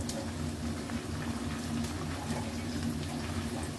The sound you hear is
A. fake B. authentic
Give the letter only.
B